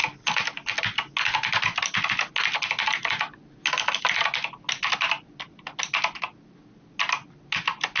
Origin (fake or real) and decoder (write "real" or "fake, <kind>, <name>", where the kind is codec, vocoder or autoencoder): real